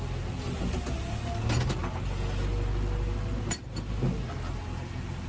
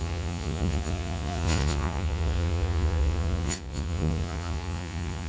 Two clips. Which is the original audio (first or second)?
first